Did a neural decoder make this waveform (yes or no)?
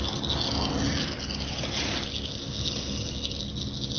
no